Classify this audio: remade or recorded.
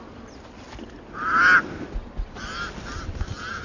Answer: recorded